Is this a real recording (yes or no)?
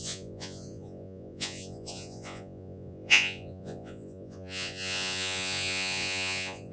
no